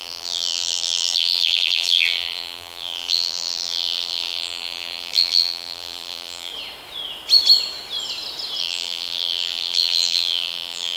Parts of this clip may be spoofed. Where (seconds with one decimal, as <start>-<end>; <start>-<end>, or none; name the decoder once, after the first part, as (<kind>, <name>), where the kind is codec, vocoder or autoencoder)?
0.0-6.5 (vocoder, BigVGAN v2); 8.6-11.0